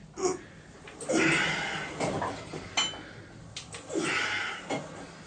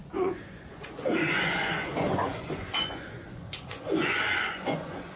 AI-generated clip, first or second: second